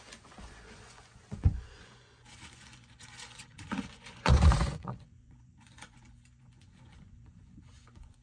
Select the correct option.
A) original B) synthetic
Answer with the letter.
B